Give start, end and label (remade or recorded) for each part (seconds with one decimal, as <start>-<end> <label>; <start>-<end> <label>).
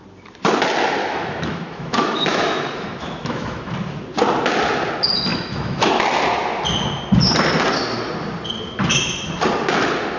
0.0-1.0 recorded; 1.0-3.7 remade; 3.7-5.3 recorded; 5.3-5.9 remade; 5.9-10.2 recorded